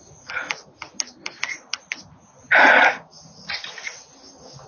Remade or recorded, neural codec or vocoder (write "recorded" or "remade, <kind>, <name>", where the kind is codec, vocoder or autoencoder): recorded